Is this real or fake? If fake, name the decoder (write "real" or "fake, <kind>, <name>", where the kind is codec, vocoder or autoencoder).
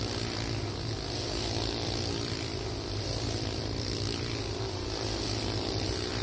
real